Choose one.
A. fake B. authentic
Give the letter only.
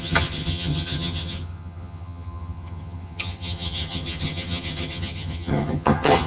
A